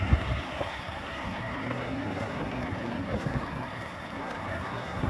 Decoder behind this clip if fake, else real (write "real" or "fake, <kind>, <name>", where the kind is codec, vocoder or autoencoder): fake, codec, SNAC